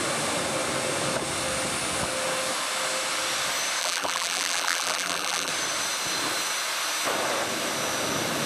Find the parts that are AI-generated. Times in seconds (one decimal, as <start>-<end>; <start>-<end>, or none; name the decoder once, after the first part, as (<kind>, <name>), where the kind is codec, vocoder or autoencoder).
3.8-5.5 (vocoder, BigVGAN v2)